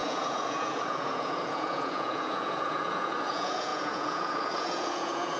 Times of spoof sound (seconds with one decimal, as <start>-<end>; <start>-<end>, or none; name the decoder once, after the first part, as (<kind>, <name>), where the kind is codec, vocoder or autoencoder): 0.0-5.4 (vocoder, Vocos)